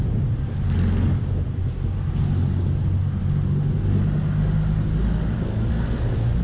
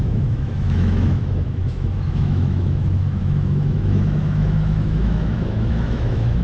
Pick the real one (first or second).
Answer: first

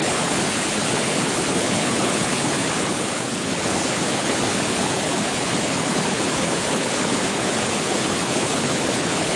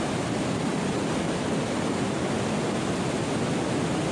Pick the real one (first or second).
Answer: second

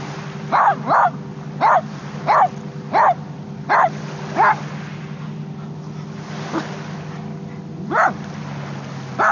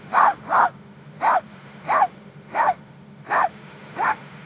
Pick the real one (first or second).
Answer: first